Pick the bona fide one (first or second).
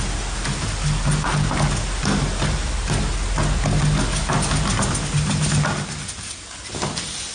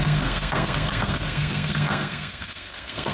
first